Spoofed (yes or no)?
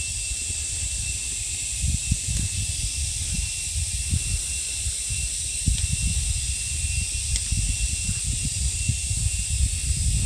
yes